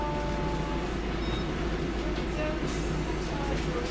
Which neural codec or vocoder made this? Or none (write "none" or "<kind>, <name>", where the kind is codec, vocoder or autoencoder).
none